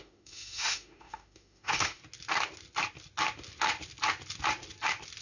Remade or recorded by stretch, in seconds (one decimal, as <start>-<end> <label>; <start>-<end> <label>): 0.0-2.0 remade; 2.0-5.2 recorded